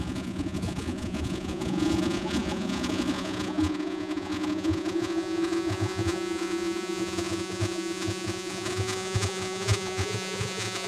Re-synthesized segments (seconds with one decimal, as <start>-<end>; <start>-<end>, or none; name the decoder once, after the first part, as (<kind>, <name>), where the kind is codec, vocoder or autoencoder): 0.0-10.9 (vocoder, Vocos)